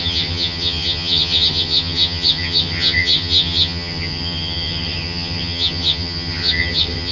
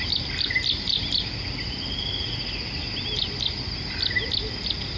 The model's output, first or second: first